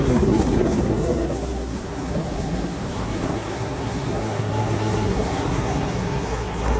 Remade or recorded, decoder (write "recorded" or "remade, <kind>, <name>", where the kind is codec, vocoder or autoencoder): remade, codec, SNAC